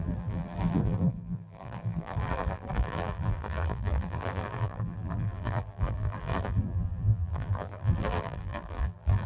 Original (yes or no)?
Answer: no